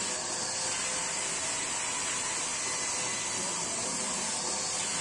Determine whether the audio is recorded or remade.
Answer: recorded